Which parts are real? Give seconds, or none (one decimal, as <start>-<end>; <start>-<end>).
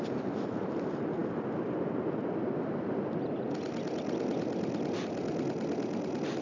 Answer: 0.0-6.4